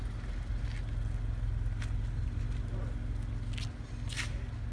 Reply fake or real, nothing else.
real